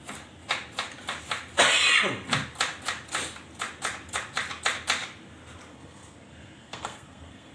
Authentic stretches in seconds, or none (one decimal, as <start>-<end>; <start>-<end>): 0.0-5.7